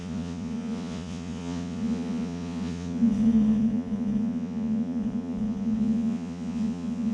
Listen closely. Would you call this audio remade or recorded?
remade